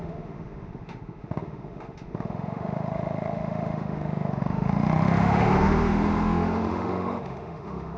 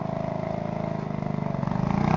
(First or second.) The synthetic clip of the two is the first